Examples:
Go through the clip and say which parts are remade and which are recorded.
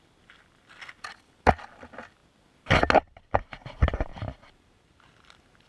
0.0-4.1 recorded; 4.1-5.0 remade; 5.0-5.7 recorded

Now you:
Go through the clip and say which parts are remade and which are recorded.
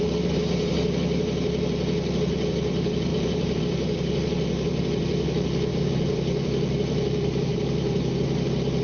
0.0-3.1 recorded; 3.1-3.6 remade; 3.6-5.7 recorded; 5.7-8.1 remade; 8.1-8.8 recorded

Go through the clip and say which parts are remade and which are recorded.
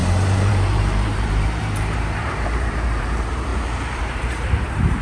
0.0-3.5 remade; 3.5-4.0 recorded; 4.0-5.0 remade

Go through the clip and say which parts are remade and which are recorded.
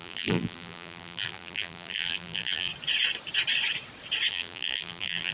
0.0-2.7 remade; 2.7-4.3 recorded; 4.3-5.3 remade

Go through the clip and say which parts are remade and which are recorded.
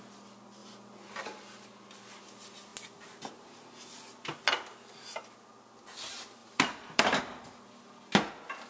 0.0-6.4 recorded; 6.4-7.2 remade; 7.2-8.7 recorded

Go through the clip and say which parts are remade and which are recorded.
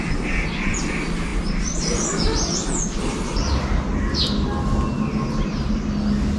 0.0-6.4 recorded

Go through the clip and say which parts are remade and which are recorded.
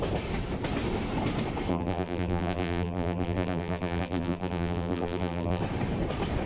0.0-1.7 recorded; 1.7-5.6 remade; 5.6-6.5 recorded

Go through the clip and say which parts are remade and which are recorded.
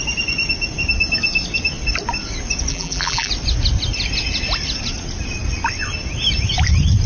0.0-2.7 recorded; 2.7-3.3 remade; 3.3-7.1 recorded